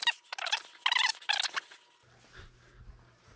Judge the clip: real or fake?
real